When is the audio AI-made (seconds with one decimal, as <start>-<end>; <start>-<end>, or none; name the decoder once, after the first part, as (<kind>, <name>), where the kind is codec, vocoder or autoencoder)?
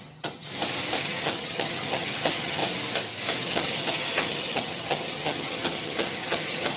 0.0-0.5 (vocoder, HiFi-GAN); 1.0-2.6; 3.4-6.8